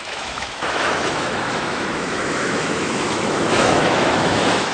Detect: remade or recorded remade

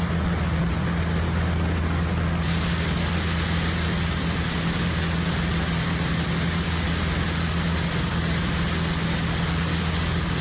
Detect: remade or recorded recorded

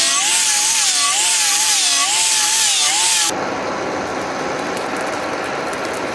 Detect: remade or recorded recorded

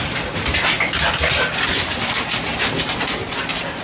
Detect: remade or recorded recorded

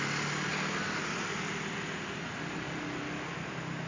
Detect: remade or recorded recorded